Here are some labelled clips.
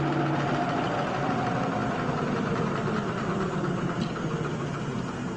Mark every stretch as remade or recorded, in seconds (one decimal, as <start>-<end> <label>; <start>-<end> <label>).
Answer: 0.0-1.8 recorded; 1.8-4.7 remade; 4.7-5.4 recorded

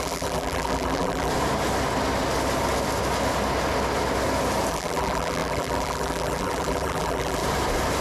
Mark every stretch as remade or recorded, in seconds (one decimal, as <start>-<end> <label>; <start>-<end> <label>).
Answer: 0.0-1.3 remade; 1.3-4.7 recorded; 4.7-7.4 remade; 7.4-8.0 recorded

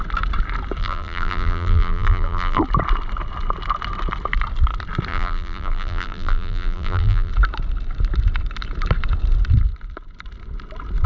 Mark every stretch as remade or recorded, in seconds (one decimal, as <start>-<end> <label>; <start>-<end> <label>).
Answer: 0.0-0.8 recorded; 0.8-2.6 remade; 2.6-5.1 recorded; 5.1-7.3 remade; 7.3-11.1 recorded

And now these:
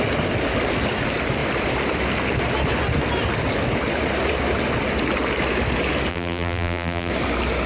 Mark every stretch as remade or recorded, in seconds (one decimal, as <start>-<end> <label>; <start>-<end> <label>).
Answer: 0.0-6.1 recorded; 6.1-7.1 remade; 7.1-7.7 recorded

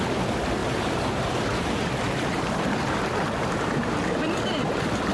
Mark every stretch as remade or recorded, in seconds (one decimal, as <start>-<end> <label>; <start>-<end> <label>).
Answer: 0.0-0.6 recorded; 0.6-3.7 remade; 3.7-5.1 recorded

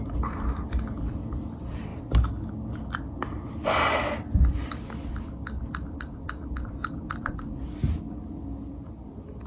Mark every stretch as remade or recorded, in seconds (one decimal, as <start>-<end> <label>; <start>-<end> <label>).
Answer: 0.0-9.5 recorded

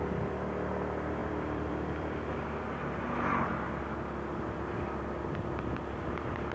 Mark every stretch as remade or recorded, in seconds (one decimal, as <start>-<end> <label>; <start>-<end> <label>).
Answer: 0.0-1.2 recorded; 1.2-2.6 remade; 2.6-6.5 recorded